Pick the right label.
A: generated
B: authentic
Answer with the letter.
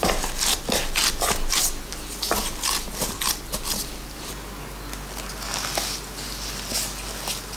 B